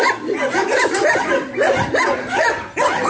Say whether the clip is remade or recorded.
recorded